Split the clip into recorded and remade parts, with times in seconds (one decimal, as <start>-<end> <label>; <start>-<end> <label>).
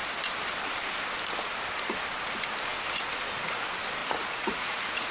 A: 0.0-4.0 recorded; 4.0-5.1 remade